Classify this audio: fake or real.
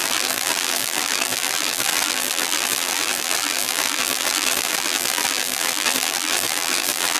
fake